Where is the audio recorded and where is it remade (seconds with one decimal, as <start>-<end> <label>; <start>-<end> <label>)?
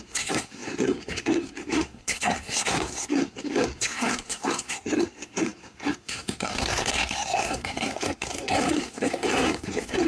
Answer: 0.0-10.1 remade